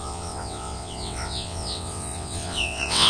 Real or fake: fake